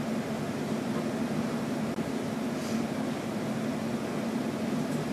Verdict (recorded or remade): recorded